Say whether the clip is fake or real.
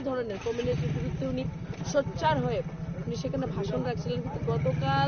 real